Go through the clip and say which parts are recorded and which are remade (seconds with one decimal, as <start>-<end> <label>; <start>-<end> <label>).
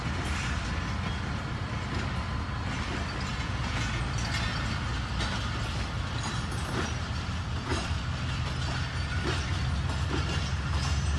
0.0-3.3 recorded; 3.3-4.0 remade; 4.0-11.2 recorded